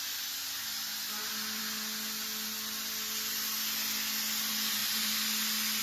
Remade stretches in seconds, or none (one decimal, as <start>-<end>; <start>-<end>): none